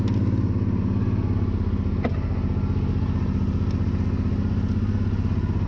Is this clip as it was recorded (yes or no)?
yes